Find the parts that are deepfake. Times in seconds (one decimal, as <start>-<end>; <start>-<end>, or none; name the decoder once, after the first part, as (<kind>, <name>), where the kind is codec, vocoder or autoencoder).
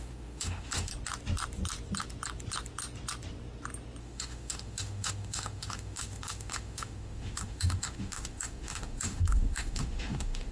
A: 0.0-0.9 (autoencoder, DAC-VAE); 4.0-10.5